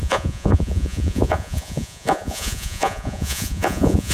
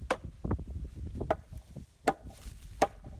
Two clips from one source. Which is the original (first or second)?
second